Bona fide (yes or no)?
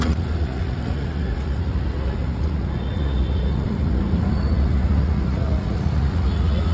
no